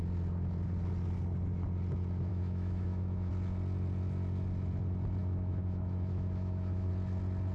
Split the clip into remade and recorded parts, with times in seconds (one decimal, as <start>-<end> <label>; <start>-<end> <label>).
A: 0.0-2.3 recorded; 2.3-3.3 remade; 3.3-5.2 recorded; 5.2-6.9 remade; 6.9-7.5 recorded